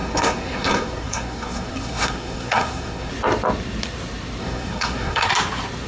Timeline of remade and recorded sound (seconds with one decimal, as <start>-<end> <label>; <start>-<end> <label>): 0.0-3.1 remade; 3.1-4.4 recorded; 4.4-5.3 remade; 5.3-5.9 recorded